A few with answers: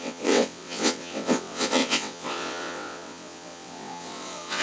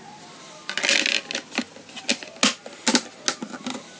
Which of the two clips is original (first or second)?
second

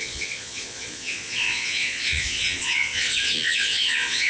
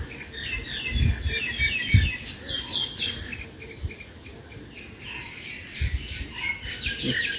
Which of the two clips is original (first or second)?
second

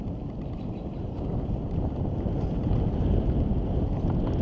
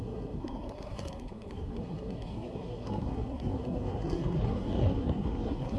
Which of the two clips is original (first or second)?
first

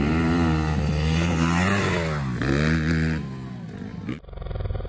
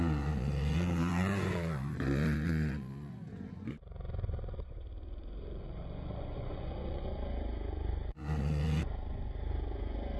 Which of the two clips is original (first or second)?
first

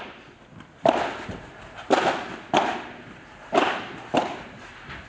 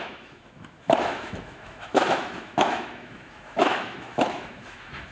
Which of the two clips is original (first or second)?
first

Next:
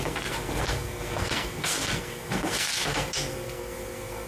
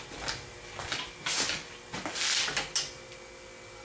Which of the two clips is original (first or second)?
second